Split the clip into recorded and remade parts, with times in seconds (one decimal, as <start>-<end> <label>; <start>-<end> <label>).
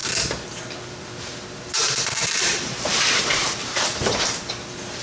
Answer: 0.0-1.2 recorded; 1.2-5.0 remade